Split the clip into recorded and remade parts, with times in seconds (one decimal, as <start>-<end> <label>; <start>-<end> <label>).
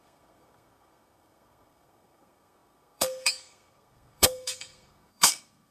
0.0-5.7 remade